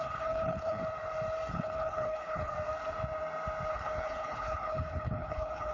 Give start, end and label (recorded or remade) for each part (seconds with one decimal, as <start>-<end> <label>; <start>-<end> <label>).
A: 0.0-0.8 remade; 0.8-1.5 recorded; 1.5-2.5 remade; 2.5-3.7 recorded; 3.7-5.7 remade